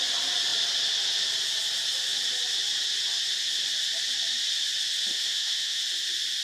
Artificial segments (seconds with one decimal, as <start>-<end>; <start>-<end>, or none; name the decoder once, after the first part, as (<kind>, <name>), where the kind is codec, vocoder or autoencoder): 5.1-5.8 (autoencoder, DAC-VAE)